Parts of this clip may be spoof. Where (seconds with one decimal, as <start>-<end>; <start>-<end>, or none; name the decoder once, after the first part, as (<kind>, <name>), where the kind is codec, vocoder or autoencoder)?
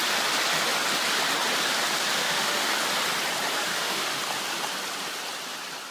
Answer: 2.2-2.7 (autoencoder, DAC-VAE); 3.7-4.2